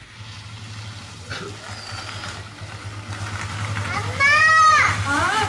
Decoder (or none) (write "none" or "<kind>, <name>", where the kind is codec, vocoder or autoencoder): none